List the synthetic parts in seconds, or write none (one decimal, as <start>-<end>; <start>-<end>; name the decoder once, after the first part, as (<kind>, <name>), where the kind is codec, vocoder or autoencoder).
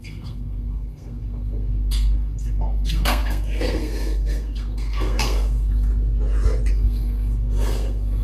0.0-5.9 (codec, SNAC); 6.7-8.2